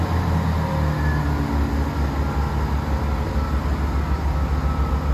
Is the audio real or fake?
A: real